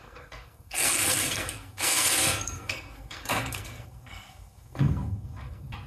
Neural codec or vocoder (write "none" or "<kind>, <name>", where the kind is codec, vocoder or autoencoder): codec, SNAC